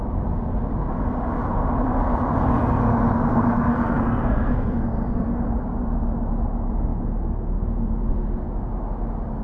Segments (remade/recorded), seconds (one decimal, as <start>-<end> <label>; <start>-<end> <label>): 0.0-3.3 recorded; 3.3-5.4 remade; 5.4-9.4 recorded